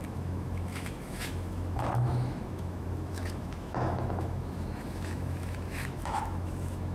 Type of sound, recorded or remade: remade